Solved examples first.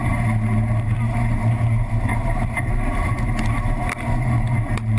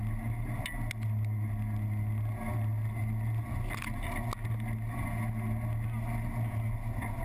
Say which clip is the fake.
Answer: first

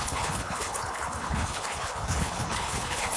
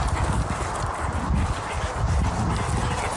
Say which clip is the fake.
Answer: first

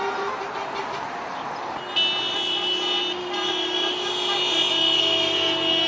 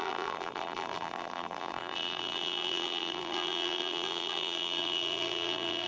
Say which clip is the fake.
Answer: second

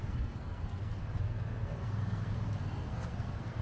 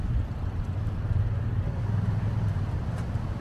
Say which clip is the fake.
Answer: first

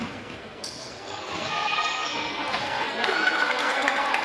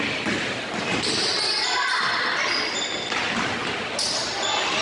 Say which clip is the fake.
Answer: first